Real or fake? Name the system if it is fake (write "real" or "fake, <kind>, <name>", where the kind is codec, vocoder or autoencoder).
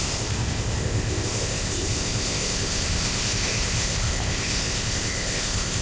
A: fake, codec, ZipCodec